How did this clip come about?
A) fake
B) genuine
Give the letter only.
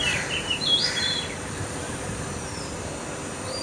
A